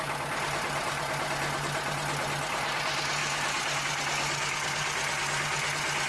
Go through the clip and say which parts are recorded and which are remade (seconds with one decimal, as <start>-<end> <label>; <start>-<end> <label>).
0.0-6.1 recorded